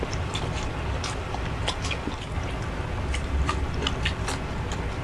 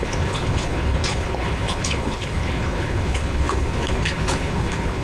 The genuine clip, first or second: first